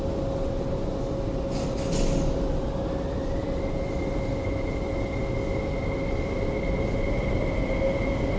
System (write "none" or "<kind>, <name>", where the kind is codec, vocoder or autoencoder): none